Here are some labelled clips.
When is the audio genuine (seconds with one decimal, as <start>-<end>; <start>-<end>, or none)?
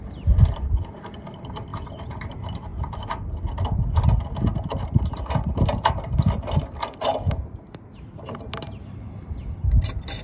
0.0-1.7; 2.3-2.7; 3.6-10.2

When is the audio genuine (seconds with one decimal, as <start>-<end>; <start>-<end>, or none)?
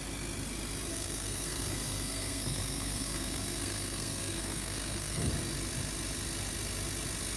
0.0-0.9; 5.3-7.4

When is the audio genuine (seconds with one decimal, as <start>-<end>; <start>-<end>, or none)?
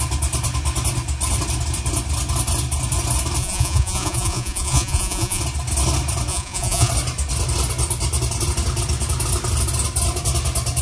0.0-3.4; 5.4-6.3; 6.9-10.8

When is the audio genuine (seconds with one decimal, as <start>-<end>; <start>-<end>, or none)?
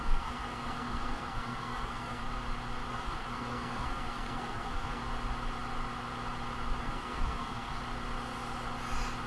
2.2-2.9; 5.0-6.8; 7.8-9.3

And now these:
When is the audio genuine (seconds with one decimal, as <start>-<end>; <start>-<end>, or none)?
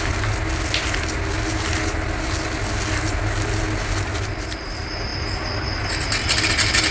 0.0-6.9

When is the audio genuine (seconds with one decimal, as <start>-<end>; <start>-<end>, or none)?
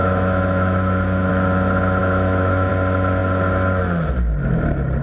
1.3-2.0; 2.7-5.0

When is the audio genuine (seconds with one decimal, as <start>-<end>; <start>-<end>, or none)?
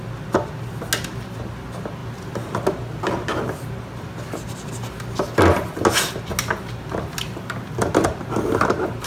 0.0-9.1